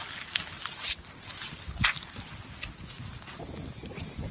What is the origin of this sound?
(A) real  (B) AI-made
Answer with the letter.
A